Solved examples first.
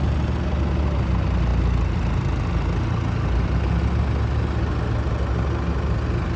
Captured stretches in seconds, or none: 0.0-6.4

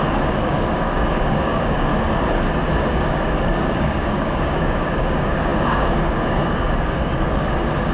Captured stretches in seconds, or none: 1.9-2.8

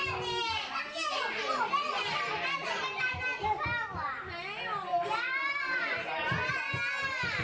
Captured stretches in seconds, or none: 0.0-7.4

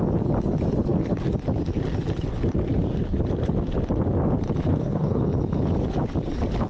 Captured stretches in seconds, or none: 0.0-4.7; 5.2-6.7

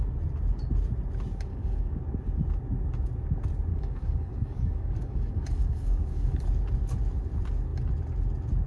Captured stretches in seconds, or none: 0.0-1.5; 2.0-3.7; 6.4-8.7

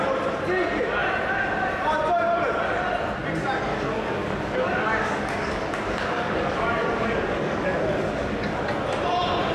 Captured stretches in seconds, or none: 0.0-3.7; 8.6-9.5

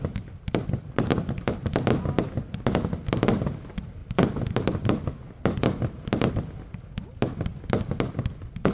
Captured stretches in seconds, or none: 0.0-8.7

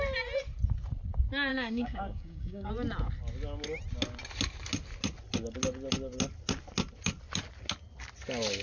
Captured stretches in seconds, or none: 0.0-1.5; 2.7-8.6